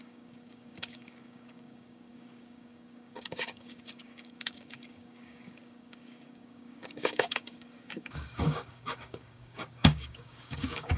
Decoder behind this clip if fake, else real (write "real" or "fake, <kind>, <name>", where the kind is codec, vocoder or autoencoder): fake, codec, DAC